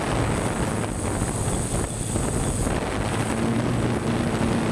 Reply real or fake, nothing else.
real